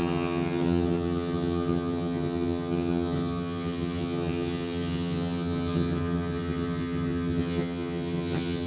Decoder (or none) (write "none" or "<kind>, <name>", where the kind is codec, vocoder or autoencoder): vocoder, HiFi-GAN